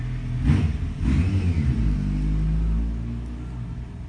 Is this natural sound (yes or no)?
yes